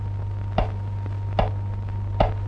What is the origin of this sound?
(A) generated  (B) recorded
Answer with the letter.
B